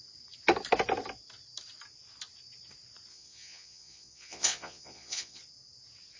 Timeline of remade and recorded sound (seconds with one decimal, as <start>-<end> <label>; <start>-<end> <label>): 0.0-3.1 recorded; 3.1-5.4 remade; 5.4-6.2 recorded

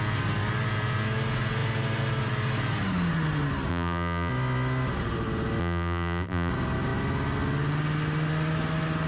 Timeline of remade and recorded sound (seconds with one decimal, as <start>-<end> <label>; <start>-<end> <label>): 0.0-3.7 recorded; 3.7-4.3 remade; 4.3-5.6 recorded; 5.6-6.5 remade; 6.5-9.1 recorded

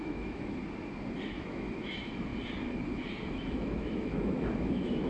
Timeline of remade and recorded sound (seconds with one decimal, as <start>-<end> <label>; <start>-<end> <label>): 0.0-0.6 remade; 0.6-1.2 recorded; 1.2-2.3 remade; 2.3-3.3 recorded; 3.3-5.1 remade

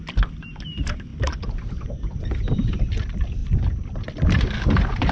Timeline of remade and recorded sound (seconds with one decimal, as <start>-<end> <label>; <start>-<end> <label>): 0.0-3.4 remade; 3.4-4.1 recorded; 4.1-5.1 remade

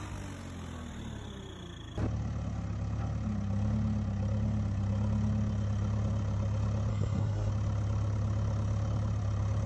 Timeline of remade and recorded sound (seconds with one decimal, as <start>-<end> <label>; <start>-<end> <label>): 0.0-6.9 recorded; 6.9-7.5 remade; 7.5-9.7 recorded

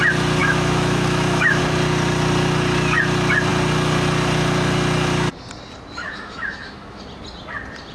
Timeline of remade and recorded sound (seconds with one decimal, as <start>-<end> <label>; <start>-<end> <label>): 0.0-0.4 recorded; 0.4-1.6 remade; 1.6-6.0 recorded; 6.0-7.0 remade; 7.0-7.9 recorded

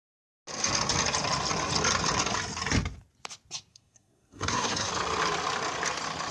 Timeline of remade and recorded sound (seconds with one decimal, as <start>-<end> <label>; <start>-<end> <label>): 0.0-3.7 recorded; 3.7-4.9 remade; 4.9-6.3 recorded